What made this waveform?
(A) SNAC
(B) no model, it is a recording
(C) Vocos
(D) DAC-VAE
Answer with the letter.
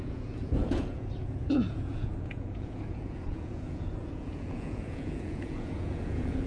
C